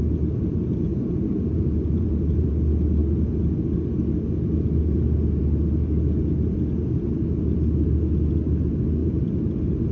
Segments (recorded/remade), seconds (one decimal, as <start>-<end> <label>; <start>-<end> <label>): 0.0-0.9 recorded; 0.9-2.5 remade; 2.5-9.0 recorded; 9.0-9.9 remade